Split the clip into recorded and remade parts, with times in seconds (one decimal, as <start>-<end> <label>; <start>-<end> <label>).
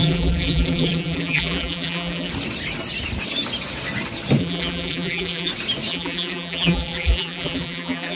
0.0-2.3 remade; 2.3-4.4 recorded; 4.4-5.5 remade; 5.5-5.9 recorded; 5.9-8.2 remade